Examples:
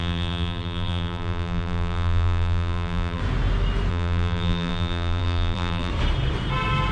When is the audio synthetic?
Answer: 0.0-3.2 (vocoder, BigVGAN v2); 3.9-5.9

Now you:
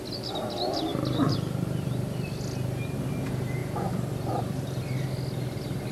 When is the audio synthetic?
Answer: none

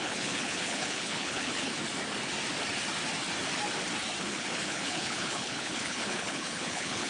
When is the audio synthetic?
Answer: 0.0-1.7 (codec, HILCodec); 4.2-7.1

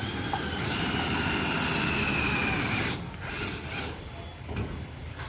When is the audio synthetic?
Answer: none

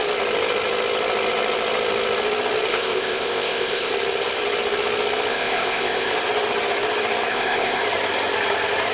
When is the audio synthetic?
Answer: 2.7-3.9 (codec, ZipCodec); 5.3-6.1; 7.3-7.8